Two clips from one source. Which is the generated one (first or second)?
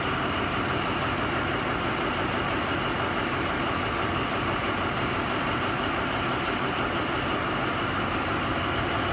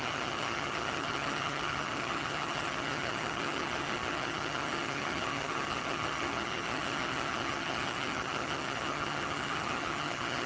second